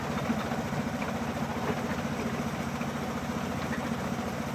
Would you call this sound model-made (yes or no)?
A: yes